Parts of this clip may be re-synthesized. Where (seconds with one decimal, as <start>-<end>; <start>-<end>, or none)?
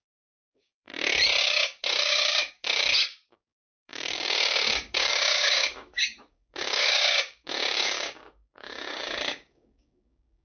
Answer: 0.0-0.9; 1.4-10.4